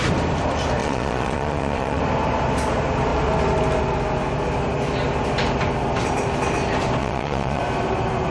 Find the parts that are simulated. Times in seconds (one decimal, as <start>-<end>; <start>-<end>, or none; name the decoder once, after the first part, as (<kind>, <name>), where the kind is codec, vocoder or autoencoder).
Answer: 0.8-2.0 (vocoder, Vocos); 7.0-7.6